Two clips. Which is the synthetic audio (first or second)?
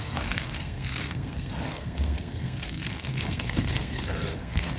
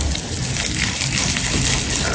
first